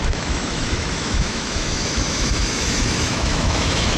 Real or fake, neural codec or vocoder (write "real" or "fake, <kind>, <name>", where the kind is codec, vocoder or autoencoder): fake, autoencoder, DAC-VAE